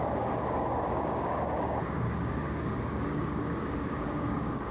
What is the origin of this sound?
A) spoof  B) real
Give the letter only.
A